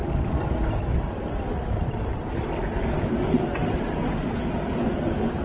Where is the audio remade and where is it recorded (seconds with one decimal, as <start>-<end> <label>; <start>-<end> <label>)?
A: 0.0-0.9 remade; 0.9-5.4 recorded